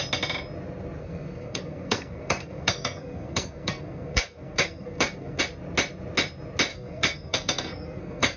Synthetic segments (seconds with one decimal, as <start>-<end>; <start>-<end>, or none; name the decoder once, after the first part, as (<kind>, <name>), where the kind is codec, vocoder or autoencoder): 1.0-5.4 (codec, SNAC); 6.7-8.4